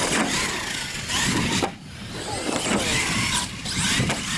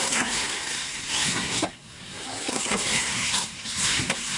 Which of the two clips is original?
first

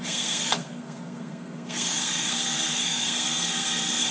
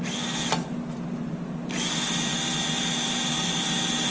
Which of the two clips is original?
second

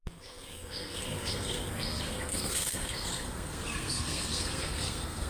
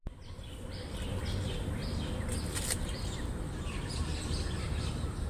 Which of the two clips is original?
second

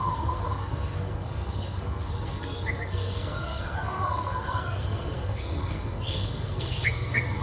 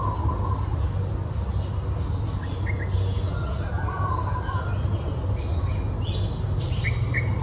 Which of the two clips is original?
second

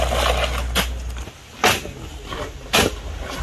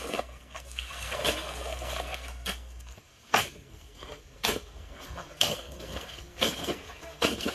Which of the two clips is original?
first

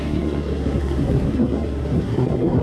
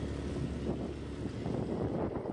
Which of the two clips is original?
second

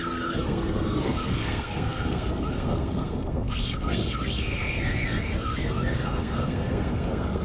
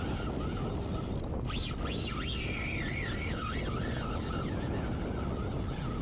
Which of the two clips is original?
second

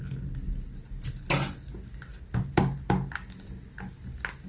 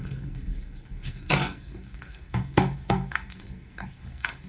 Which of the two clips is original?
first